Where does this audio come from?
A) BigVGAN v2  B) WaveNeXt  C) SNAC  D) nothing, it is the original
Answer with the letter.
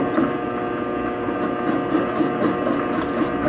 D